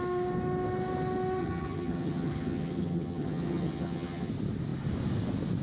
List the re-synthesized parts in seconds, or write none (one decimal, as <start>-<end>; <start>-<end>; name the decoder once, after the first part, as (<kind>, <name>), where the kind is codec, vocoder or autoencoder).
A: 1.4-4.3 (vocoder, HiFi-GAN)